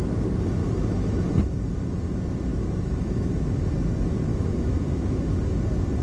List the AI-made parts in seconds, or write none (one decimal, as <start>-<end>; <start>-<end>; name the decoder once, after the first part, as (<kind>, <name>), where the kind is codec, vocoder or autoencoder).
0.6-1.2 (autoencoder, DAC-VAE); 2.5-3.4; 4.3-5.4